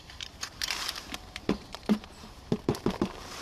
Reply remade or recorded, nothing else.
remade